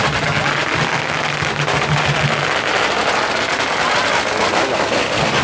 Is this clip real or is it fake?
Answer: real